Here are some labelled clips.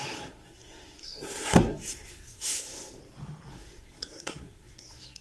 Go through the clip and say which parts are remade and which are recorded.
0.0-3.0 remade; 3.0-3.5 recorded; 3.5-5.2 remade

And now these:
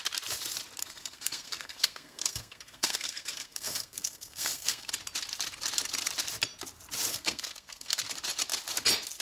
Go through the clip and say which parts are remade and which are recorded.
0.0-0.8 recorded; 0.8-4.9 remade; 4.9-7.1 recorded; 7.1-8.0 remade; 8.0-9.2 recorded

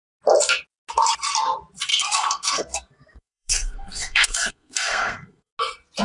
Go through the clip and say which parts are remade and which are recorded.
0.0-1.9 recorded; 1.9-5.5 remade; 5.5-6.0 recorded